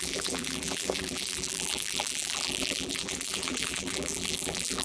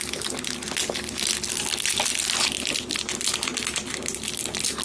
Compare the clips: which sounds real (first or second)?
second